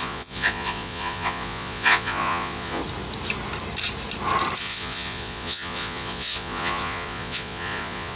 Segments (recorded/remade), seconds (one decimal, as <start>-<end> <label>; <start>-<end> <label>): 0.0-2.8 remade; 2.8-4.6 recorded; 4.6-8.2 remade